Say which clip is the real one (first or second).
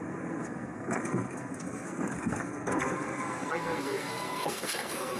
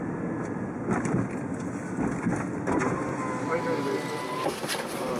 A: second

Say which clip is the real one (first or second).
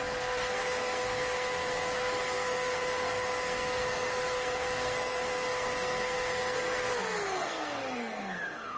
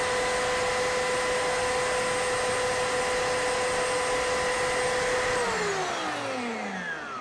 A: second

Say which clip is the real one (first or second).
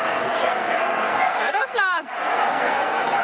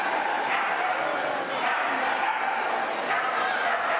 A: second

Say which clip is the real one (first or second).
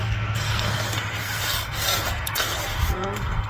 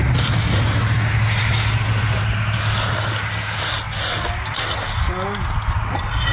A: second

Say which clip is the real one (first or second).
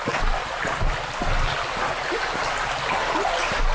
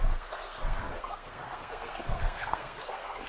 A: first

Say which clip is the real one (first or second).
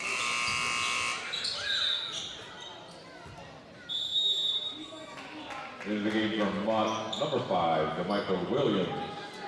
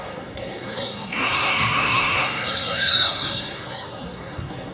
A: first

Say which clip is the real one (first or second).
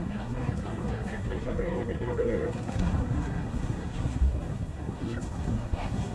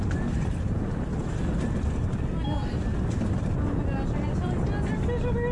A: second